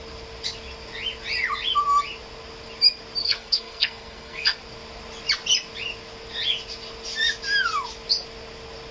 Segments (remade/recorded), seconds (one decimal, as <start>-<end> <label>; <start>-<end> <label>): 0.0-3.2 recorded; 3.2-4.6 remade; 4.6-8.9 recorded